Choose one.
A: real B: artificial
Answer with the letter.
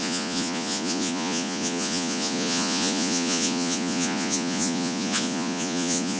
B